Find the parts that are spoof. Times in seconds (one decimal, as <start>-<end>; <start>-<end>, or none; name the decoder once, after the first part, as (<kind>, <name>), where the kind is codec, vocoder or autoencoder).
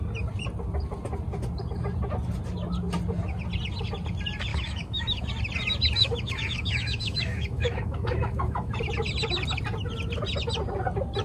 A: 4.5-5.3 (autoencoder, DAC-VAE); 6.0-8.7